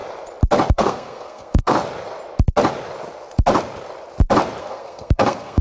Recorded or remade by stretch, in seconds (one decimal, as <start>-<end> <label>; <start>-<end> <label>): 0.0-0.7 recorded; 0.7-1.8 remade; 1.8-4.6 recorded; 4.6-5.6 remade